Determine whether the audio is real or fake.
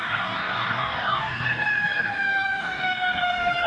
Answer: fake